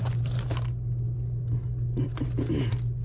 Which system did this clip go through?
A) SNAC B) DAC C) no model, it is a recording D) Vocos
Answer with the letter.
C